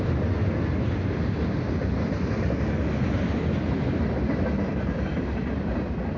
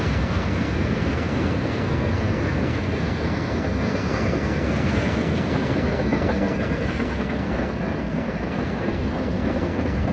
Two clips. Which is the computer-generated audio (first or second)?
second